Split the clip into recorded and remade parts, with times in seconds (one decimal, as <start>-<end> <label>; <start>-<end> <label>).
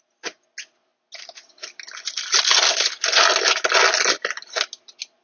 0.0-5.2 recorded